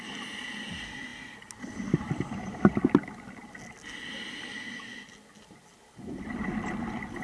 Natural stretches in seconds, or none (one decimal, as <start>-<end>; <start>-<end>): 0.0-7.2